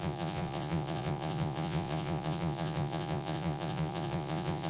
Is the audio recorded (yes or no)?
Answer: no